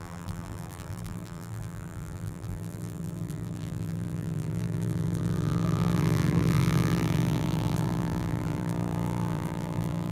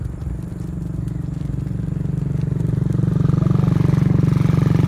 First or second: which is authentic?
second